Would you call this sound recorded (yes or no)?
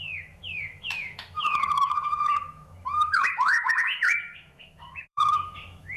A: no